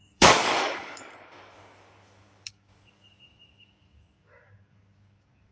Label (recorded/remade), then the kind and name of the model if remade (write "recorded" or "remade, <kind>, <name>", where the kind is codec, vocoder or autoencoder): remade, codec, DAC